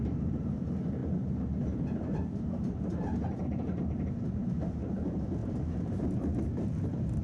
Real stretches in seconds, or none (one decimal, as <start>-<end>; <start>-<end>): none